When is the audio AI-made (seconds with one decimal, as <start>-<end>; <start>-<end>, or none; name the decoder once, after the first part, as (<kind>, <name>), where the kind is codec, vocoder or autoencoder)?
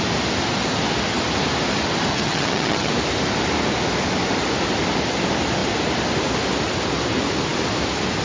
2.1-2.9 (vocoder, HiFi-GAN)